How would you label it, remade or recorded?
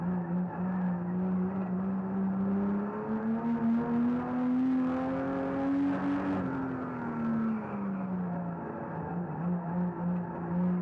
recorded